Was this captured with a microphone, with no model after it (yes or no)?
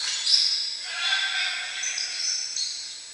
yes